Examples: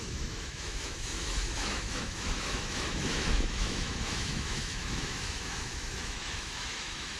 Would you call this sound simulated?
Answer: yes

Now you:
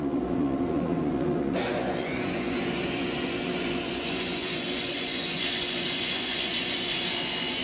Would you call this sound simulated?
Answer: yes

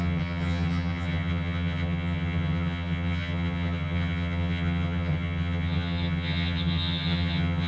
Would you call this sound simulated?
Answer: yes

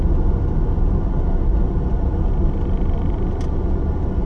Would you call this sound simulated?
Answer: no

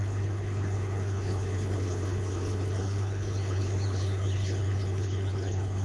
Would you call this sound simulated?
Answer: yes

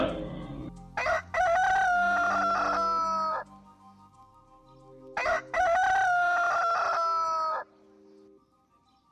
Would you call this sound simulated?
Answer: no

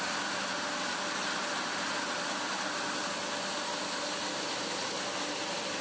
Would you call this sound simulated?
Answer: no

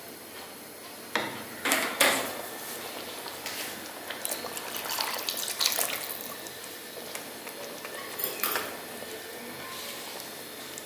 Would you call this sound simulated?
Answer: no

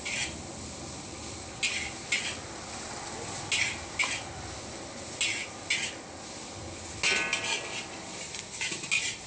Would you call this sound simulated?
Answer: no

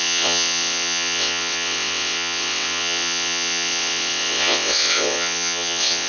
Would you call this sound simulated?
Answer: yes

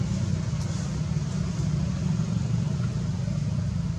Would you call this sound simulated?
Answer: no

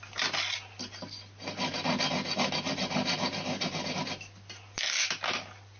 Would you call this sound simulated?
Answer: no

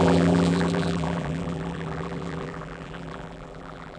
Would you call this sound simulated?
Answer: yes